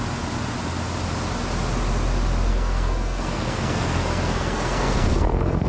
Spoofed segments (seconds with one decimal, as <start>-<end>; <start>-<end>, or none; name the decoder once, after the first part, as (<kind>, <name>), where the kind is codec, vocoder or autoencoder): 2.5-5.7 (codec, SNAC)